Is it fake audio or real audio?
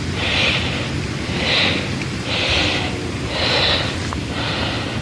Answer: real